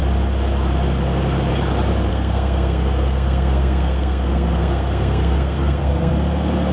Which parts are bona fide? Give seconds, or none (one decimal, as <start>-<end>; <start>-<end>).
0.0-2.1; 6.1-6.7